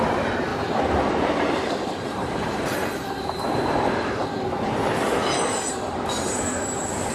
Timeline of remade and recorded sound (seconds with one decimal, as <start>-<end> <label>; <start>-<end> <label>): 0.0-0.5 recorded; 0.5-4.2 remade; 4.2-7.1 recorded